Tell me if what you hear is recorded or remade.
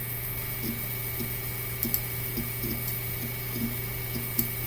recorded